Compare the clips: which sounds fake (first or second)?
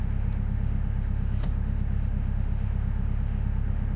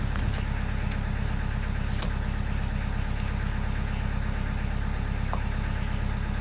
first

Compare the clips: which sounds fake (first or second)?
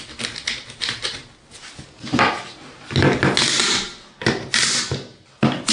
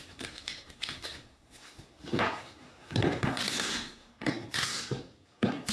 second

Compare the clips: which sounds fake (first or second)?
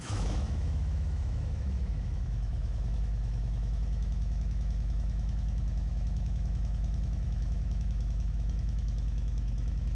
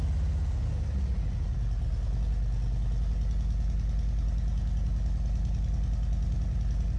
first